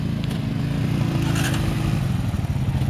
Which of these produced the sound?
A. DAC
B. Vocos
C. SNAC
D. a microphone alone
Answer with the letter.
D